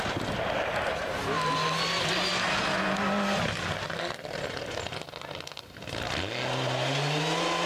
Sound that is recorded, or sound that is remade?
recorded